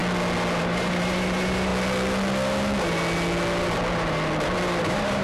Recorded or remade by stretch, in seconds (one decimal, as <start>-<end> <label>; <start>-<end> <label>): 0.0-0.6 recorded; 0.6-1.7 remade; 1.7-4.8 recorded; 4.8-5.2 remade